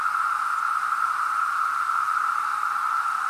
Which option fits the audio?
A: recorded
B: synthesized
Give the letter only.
A